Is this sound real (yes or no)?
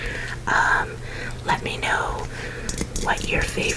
yes